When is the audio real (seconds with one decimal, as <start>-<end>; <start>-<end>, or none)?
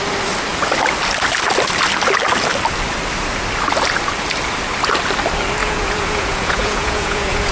0.0-5.6